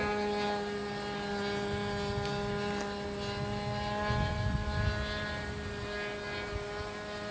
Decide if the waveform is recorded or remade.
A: recorded